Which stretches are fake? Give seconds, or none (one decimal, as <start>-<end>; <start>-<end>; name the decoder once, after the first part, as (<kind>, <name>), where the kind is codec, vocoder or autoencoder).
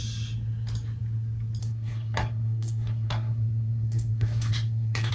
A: 1.6-5.1 (codec, SNAC)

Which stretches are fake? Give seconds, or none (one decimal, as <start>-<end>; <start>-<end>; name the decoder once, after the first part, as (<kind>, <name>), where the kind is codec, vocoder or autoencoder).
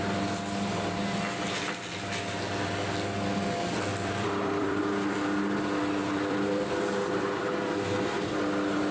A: 3.9-4.8 (vocoder, BigVGAN v2); 6.0-6.7